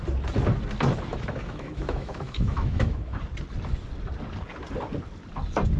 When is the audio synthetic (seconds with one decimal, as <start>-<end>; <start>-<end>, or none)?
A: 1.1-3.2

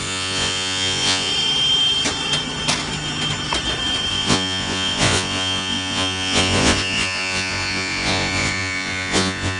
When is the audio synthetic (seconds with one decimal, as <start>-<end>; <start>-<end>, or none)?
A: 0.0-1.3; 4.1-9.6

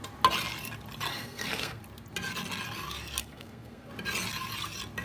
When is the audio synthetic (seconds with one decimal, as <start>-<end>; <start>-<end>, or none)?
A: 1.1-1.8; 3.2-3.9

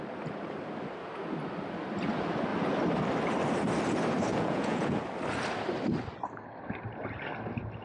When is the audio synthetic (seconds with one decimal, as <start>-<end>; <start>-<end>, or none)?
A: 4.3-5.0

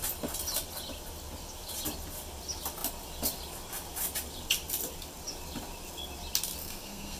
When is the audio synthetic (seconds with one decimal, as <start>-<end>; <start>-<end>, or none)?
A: 6.6-7.2

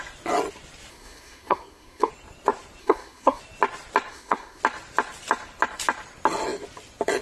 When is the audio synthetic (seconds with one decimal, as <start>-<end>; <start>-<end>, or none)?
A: 0.9-2.1; 2.8-3.4; 4.1-4.6

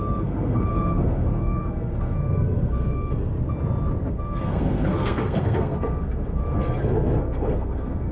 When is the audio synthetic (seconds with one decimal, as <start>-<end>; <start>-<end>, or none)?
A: 0.0-3.3; 4.1-8.1

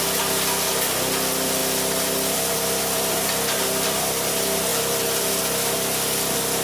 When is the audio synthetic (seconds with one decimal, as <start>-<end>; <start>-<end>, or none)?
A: 1.6-4.3; 4.7-5.4